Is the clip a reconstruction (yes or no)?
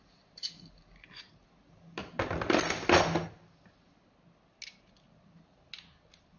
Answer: no